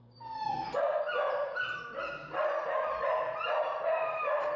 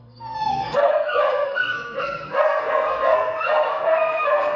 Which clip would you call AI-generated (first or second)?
second